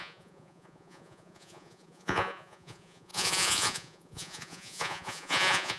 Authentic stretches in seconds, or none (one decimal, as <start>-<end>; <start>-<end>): none